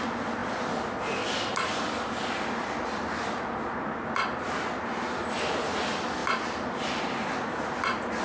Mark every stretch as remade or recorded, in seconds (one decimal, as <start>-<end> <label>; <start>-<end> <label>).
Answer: 0.0-8.2 recorded